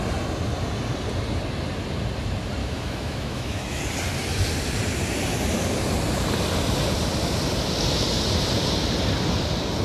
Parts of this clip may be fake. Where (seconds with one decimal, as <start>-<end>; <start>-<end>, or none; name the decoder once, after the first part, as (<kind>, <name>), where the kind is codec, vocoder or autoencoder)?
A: 2.6-3.8 (autoencoder, DAC-VAE)